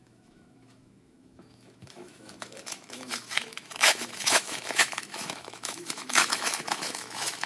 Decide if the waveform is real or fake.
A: fake